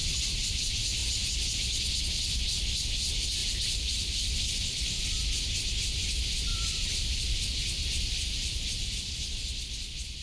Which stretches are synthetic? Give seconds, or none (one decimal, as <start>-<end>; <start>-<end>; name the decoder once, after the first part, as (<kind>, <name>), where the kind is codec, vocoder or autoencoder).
0.0-0.5 (vocoder, BigVGAN v2); 3.4-5.4; 6.5-7.3

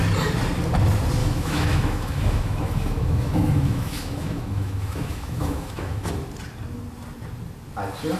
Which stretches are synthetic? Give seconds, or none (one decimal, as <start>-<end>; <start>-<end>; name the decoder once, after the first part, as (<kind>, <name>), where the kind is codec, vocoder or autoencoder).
1.2-6.1 (autoencoder, DAC-VAE)

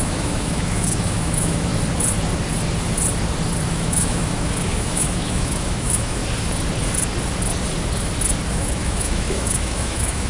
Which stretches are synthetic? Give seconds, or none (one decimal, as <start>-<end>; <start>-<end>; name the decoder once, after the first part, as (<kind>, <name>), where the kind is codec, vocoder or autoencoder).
0.0-1.7 (autoencoder, DAC-VAE); 3.7-6.2; 8.5-10.3

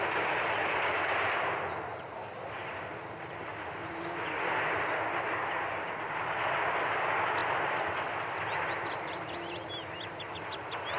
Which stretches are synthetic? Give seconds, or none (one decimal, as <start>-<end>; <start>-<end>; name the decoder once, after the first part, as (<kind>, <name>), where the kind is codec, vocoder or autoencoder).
none

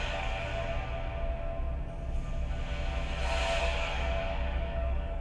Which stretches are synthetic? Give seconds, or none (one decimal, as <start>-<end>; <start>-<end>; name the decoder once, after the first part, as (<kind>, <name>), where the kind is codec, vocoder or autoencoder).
0.0-0.5 (codec, DAC); 3.6-5.2

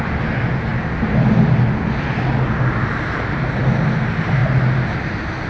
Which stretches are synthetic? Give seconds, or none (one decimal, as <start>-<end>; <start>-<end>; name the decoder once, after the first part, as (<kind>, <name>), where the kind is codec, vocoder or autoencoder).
none

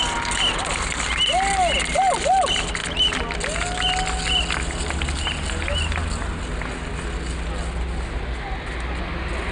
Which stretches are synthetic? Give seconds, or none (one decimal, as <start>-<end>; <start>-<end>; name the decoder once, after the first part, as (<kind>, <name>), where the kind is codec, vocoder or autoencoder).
none

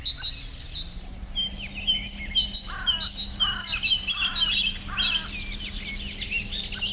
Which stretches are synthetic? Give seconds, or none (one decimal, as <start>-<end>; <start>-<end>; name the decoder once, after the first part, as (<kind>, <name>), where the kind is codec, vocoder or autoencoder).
none